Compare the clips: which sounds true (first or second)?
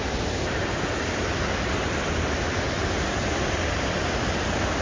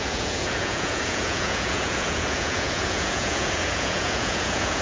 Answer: first